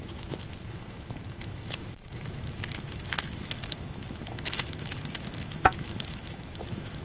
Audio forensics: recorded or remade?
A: remade